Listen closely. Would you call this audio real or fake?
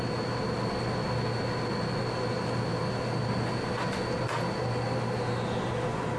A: real